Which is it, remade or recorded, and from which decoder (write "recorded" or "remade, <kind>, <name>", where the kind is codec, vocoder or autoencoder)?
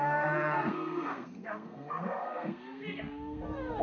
remade, codec, SNAC